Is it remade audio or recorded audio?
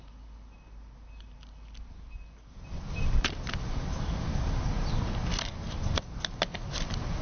recorded